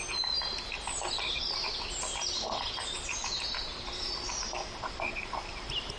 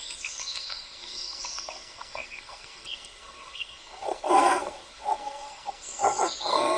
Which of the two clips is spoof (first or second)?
second